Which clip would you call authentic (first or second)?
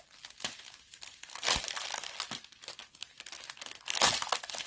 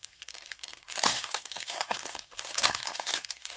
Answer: first